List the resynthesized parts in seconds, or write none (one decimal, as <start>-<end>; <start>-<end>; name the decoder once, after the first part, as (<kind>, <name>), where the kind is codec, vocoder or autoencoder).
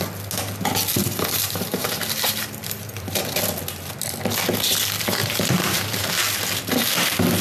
1.0-3.2 (vocoder, BigVGAN v2); 5.2-6.1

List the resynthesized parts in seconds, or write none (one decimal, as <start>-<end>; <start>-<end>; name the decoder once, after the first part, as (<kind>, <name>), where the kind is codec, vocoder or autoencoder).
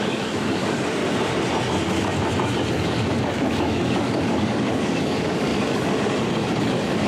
0.0-1.0 (codec, DAC); 2.7-7.1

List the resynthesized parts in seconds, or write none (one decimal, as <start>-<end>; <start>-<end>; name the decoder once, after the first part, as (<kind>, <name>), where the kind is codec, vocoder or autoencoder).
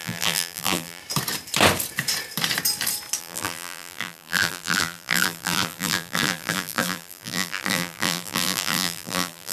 0.0-1.0 (vocoder, BigVGAN v2); 3.2-9.5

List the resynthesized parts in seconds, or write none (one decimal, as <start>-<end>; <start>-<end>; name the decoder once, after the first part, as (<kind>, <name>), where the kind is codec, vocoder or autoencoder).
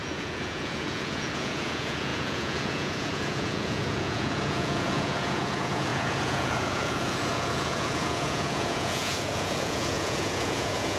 0.0-11.0 (vocoder, Vocos)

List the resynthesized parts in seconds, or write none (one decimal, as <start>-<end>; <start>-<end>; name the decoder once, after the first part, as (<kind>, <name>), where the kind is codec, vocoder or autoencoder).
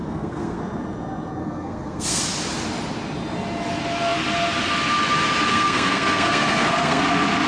0.0-0.6 (codec, SNAC); 1.4-2.2; 5.5-7.0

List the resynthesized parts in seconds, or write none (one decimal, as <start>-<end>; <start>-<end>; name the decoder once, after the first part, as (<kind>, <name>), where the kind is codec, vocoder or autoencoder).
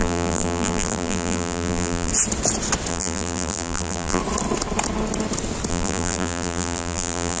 0.0-2.1 (vocoder, BigVGAN v2); 2.9-4.2; 5.7-7.4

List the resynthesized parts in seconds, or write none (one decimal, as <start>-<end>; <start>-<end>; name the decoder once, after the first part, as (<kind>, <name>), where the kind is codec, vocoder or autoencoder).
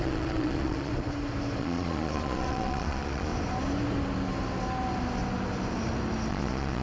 0.0-0.9 (vocoder, Vocos); 1.6-3.3; 6.3-6.8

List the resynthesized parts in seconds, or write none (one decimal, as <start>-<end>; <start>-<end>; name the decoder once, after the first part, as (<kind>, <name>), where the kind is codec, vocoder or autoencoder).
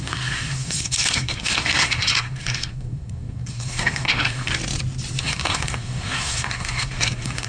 0.0-4.5 (codec, SNAC); 5.2-7.5